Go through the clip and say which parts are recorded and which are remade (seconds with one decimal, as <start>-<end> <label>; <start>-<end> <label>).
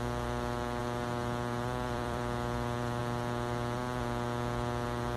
0.0-0.8 recorded; 0.8-3.0 remade; 3.0-5.2 recorded